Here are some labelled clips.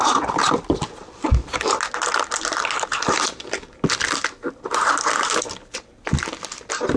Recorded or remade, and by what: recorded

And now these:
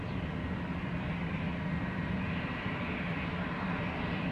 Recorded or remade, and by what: recorded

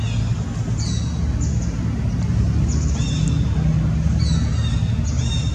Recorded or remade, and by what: recorded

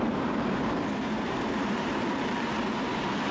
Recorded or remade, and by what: remade, vocoder, BigVGAN v2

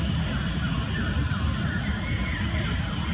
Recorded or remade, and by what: recorded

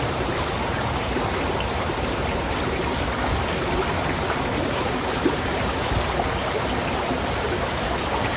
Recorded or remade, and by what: remade, vocoder, BigVGAN v2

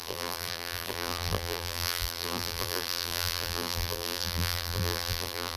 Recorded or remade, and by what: remade, vocoder, BigVGAN v2